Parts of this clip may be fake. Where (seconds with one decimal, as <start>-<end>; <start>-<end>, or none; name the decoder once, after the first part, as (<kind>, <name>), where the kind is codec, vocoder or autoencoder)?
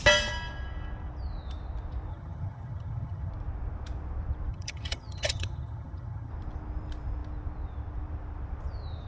2.1-3.3 (vocoder, HiFi-GAN); 4.5-6.3